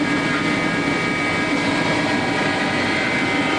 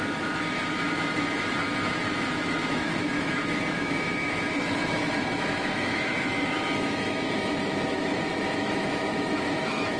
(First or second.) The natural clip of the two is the first